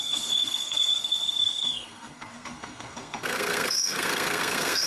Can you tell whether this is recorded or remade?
remade